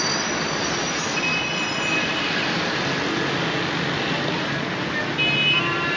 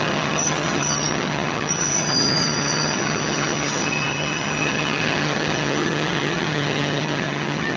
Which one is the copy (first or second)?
second